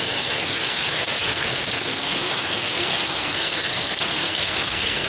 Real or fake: fake